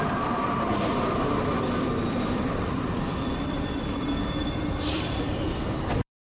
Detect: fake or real fake